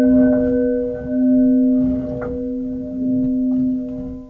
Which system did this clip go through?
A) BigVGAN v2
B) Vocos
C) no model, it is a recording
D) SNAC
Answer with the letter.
C